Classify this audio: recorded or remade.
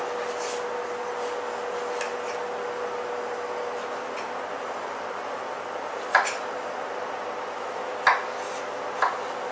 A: recorded